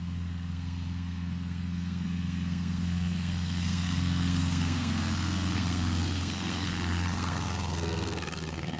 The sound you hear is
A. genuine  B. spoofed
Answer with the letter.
B